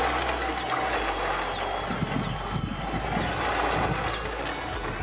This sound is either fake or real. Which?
real